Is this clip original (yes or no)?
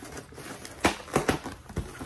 yes